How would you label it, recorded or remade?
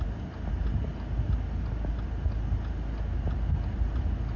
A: recorded